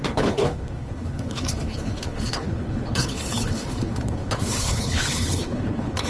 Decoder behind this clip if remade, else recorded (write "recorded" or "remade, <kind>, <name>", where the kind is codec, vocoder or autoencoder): remade, codec, HILCodec